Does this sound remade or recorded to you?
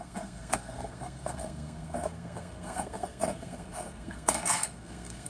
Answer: remade